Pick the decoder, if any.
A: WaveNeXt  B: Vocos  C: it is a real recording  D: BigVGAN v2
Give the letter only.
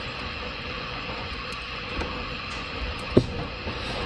B